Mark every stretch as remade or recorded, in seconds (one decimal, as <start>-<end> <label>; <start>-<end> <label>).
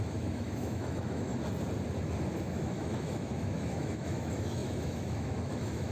0.0-1.3 remade; 1.3-2.4 recorded; 2.4-5.9 remade